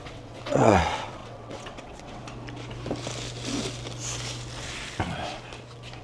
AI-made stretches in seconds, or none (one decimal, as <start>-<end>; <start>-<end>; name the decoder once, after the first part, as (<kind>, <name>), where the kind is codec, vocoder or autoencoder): 0.0-2.2 (vocoder, WaveNeXt)